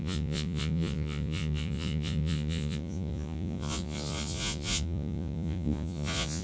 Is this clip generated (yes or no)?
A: yes